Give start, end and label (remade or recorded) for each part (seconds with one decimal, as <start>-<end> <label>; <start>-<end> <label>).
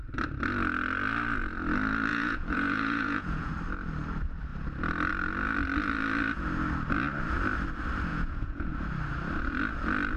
0.0-2.1 recorded; 2.1-3.5 remade; 3.5-8.1 recorded; 8.1-8.7 remade; 8.7-10.2 recorded